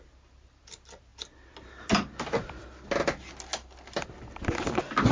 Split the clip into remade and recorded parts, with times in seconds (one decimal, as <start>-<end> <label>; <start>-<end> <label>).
0.0-5.1 recorded